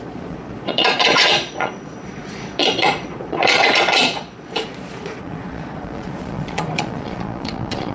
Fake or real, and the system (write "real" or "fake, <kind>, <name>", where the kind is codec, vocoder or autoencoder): fake, vocoder, Vocos